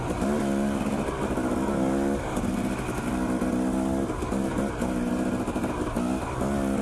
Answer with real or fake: real